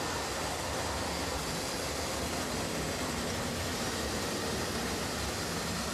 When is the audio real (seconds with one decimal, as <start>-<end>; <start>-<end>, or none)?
0.0-3.7; 4.5-5.9